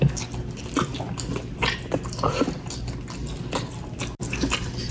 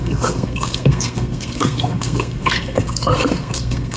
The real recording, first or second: first